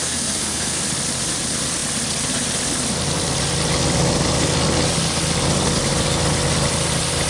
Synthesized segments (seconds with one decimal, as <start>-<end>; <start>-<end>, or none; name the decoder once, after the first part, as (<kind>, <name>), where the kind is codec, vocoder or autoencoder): 0.0-0.8 (codec, SNAC)